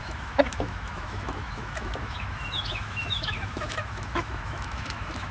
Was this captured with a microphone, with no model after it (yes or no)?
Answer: no